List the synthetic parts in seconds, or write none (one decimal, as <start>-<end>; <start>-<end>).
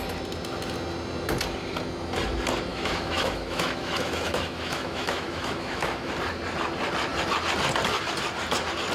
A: 2.7-6.1